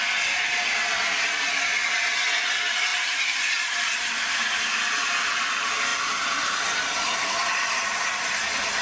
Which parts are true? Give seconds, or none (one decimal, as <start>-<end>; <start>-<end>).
0.0-2.9; 4.6-5.9; 6.6-7.4